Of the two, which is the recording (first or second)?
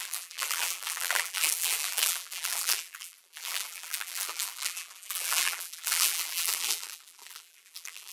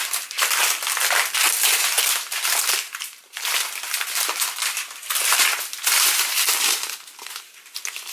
second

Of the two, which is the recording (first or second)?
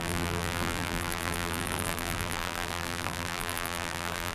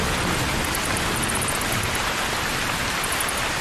second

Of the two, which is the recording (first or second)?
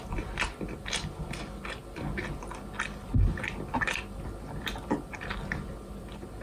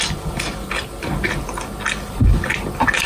first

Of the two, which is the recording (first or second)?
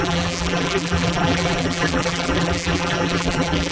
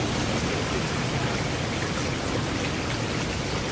second